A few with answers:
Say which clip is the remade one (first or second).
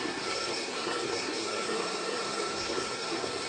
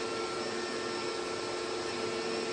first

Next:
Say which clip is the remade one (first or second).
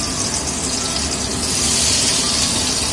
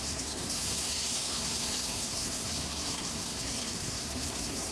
second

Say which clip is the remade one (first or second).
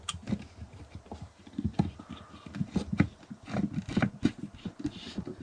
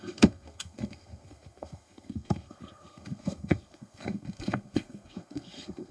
second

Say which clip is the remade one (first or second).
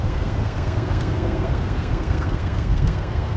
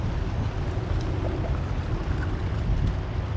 first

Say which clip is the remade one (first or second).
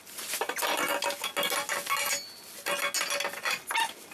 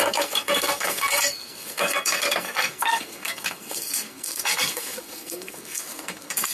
second